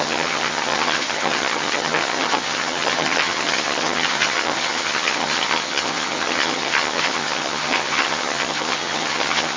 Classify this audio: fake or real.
fake